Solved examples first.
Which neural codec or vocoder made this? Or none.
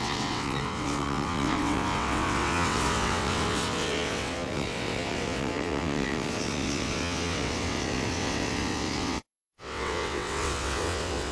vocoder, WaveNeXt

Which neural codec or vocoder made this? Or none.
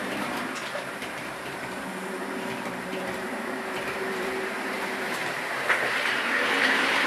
vocoder, BigVGAN v2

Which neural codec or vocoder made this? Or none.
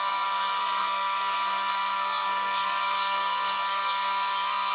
codec, SNAC